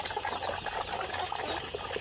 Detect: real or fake real